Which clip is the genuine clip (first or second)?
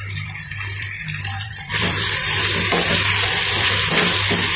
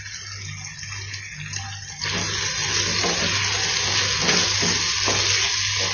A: second